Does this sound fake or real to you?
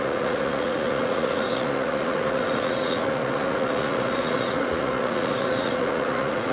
fake